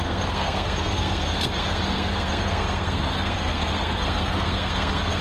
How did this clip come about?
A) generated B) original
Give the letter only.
A